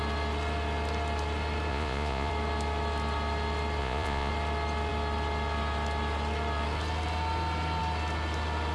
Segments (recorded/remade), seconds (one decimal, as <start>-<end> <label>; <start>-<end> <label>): 0.0-1.7 recorded; 1.7-2.3 remade; 2.3-3.8 recorded; 3.8-4.3 remade; 4.3-8.7 recorded